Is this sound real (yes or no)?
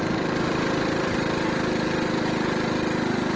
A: yes